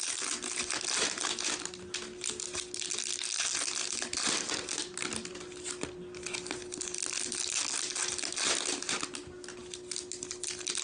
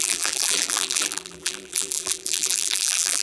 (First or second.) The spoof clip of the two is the second